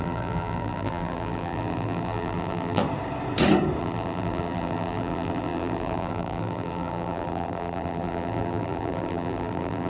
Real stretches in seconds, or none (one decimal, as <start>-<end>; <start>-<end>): 2.8-3.8